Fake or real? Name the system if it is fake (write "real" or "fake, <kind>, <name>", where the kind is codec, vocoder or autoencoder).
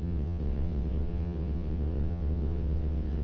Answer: fake, vocoder, WaveNeXt